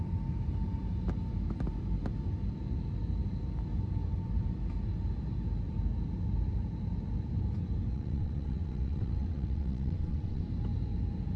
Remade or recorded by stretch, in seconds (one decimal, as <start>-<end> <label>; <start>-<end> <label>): 0.0-7.9 recorded; 7.9-10.4 remade; 10.4-11.4 recorded